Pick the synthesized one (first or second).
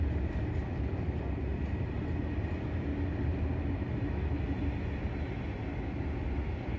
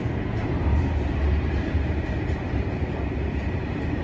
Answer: second